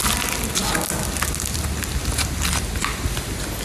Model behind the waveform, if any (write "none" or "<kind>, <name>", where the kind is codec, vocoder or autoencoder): none